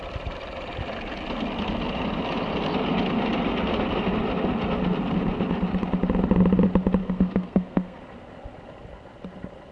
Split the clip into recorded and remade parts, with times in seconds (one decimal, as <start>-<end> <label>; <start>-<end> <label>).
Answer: 0.0-7.0 recorded; 7.0-8.0 remade; 8.0-9.7 recorded